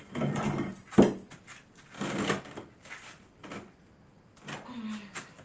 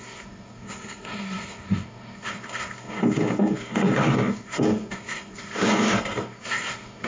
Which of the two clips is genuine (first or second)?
first